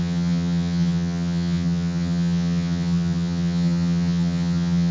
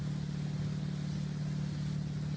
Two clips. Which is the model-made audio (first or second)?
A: first